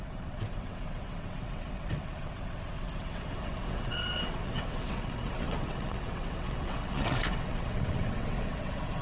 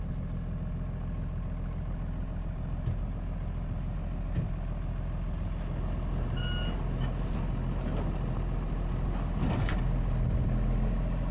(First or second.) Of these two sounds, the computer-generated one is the first